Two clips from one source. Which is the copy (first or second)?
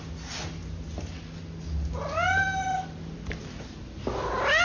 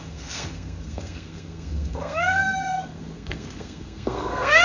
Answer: second